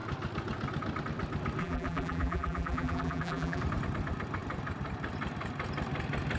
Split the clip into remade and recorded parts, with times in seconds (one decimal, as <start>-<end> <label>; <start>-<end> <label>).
0.0-1.6 recorded; 1.6-3.6 remade; 3.6-6.4 recorded